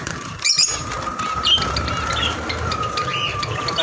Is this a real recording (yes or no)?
no